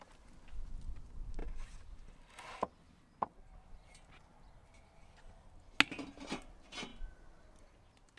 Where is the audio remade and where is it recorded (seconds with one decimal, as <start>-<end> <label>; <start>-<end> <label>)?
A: 0.0-8.2 recorded